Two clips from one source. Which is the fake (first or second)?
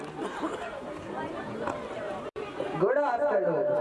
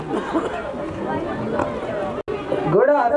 first